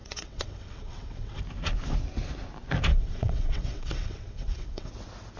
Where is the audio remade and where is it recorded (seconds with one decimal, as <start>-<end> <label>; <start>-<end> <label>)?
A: 0.0-1.4 remade; 1.4-2.9 recorded; 2.9-4.9 remade; 4.9-5.4 recorded